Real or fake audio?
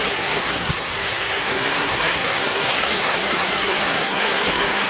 fake